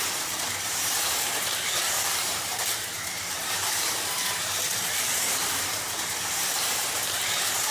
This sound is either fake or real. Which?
fake